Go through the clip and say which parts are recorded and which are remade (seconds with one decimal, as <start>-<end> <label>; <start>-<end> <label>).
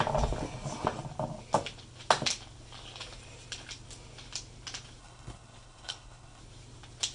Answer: 0.0-5.0 recorded; 5.0-6.4 remade; 6.4-7.1 recorded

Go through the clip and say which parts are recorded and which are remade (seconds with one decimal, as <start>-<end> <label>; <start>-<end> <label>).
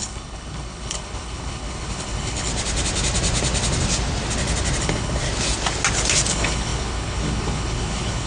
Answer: 0.0-2.5 remade; 2.5-4.8 recorded; 4.8-5.2 remade; 5.2-6.3 recorded; 6.3-8.3 remade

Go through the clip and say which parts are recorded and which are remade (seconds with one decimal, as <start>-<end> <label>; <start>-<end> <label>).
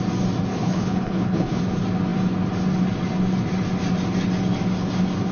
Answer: 0.0-0.5 recorded; 0.5-1.6 remade; 1.6-5.3 recorded